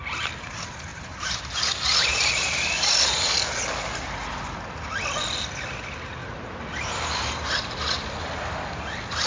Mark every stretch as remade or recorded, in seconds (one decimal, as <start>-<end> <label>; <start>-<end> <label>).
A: 0.0-0.9 recorded; 0.9-1.4 remade; 1.4-2.1 recorded; 2.1-2.9 remade; 2.9-6.2 recorded; 6.2-7.4 remade; 7.4-9.3 recorded